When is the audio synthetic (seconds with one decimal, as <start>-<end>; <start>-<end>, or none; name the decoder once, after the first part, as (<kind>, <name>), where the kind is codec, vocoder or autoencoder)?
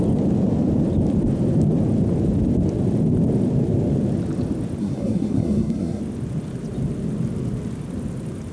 4.8-6.0 (codec, SNAC)